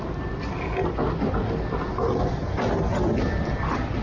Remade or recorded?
recorded